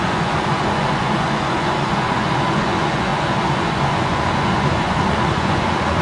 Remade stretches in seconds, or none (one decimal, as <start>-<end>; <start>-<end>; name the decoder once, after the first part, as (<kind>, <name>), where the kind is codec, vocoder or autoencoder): 0.0-6.0 (vocoder, Vocos)